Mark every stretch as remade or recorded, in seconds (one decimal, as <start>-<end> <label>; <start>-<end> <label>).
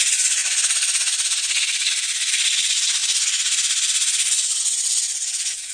0.0-5.7 recorded